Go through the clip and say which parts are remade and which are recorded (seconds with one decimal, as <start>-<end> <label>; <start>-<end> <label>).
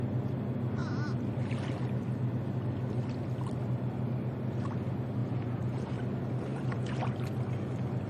0.0-5.2 recorded; 5.2-5.9 remade; 5.9-6.5 recorded; 6.5-7.0 remade; 7.0-8.1 recorded